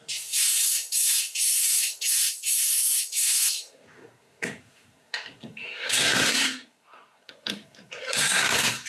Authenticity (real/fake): fake